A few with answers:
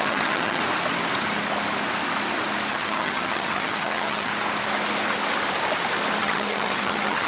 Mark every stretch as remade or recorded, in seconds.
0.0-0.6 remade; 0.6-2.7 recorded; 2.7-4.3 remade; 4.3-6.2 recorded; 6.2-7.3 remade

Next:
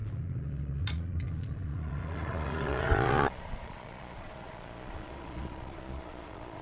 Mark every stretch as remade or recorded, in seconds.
0.0-6.6 remade